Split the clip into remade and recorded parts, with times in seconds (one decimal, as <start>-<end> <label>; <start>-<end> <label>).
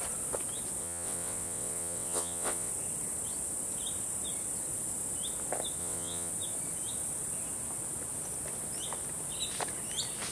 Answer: 0.0-0.8 recorded; 0.8-2.7 remade; 2.7-5.8 recorded; 5.8-6.3 remade; 6.3-10.3 recorded